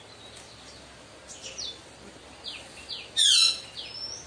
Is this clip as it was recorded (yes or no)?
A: yes